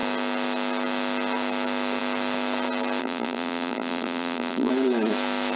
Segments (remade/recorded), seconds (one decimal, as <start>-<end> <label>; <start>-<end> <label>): 0.0-3.0 recorded; 3.0-4.7 remade; 4.7-5.6 recorded